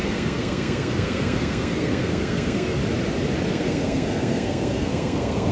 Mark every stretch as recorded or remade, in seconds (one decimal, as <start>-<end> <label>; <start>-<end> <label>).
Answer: 0.0-2.8 remade; 2.8-3.5 recorded; 3.5-5.5 remade